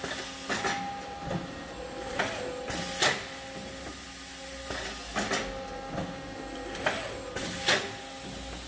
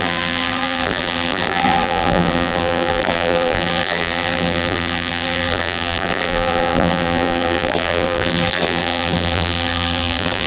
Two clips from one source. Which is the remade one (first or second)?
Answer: second